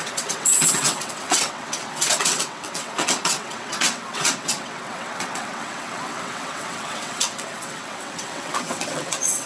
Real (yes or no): no